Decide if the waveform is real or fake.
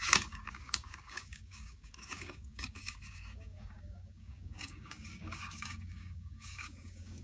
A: fake